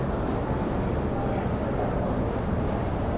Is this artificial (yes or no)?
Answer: no